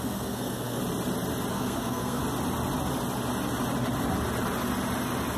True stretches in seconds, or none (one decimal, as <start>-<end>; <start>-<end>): 0.8-1.5; 2.2-5.4